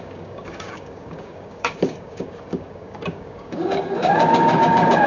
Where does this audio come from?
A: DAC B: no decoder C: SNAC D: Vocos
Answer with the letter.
A